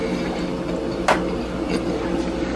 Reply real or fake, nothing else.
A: real